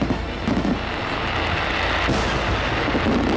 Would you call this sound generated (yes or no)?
no